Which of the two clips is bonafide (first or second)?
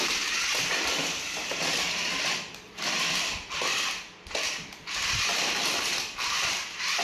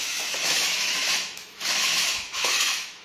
first